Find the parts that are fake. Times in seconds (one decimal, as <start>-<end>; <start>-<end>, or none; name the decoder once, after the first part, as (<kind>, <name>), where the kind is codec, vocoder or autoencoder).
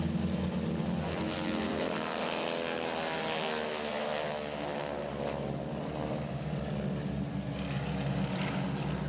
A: none